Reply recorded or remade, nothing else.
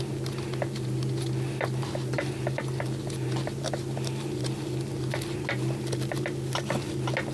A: recorded